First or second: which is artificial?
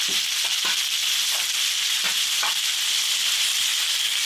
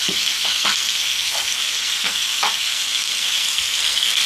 second